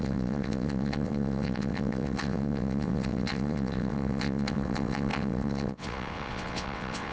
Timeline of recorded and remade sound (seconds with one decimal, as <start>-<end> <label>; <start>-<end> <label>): 0.0-7.1 remade